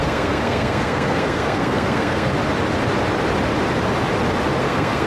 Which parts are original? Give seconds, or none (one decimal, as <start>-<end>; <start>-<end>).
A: 2.3-4.6